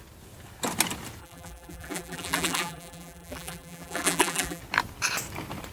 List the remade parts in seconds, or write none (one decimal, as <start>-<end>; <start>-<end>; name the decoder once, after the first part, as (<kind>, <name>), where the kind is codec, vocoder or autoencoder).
1.2-4.6 (vocoder, BigVGAN v2)